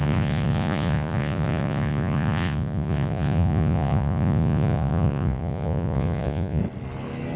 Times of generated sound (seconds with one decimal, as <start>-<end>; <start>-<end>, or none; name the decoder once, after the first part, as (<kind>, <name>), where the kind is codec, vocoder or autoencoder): 0.0-6.6 (vocoder, Vocos)